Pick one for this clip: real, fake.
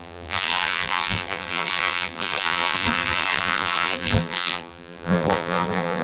fake